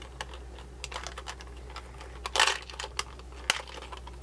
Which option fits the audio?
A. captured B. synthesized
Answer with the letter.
A